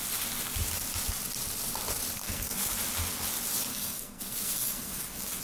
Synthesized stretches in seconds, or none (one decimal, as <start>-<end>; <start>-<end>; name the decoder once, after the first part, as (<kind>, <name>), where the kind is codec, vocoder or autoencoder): 2.2-2.7 (codec, SNAC); 3.7-5.4